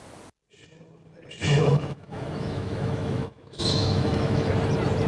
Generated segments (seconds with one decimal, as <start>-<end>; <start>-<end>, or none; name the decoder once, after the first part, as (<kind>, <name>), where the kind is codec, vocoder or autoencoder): 1.4-4.5 (autoencoder, DAC-VAE)